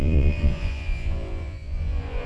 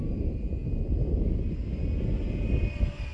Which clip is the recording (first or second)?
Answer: second